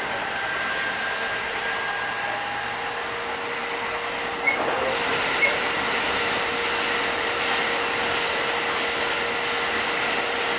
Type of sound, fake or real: real